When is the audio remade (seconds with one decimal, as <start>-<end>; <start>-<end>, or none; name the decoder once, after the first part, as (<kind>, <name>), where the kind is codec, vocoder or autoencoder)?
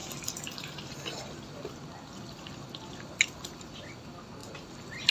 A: none